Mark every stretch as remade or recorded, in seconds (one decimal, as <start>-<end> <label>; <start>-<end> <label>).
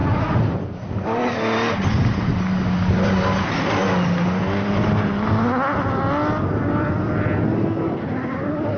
0.0-8.8 recorded